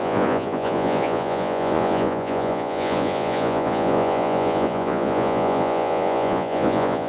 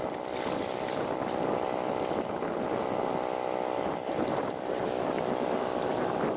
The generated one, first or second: first